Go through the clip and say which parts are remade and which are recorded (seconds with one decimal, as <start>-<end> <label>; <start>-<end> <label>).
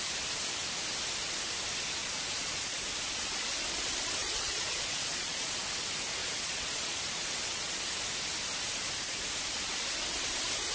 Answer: 0.0-2.0 recorded; 2.0-2.8 remade; 2.8-4.2 recorded; 4.2-5.5 remade; 5.5-6.2 recorded; 6.2-7.9 remade; 7.9-10.7 recorded